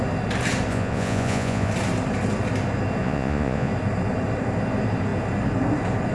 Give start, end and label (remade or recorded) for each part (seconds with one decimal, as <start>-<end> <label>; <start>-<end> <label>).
0.0-0.7 recorded; 0.7-1.7 remade; 1.7-3.0 recorded; 3.0-3.7 remade; 3.7-6.1 recorded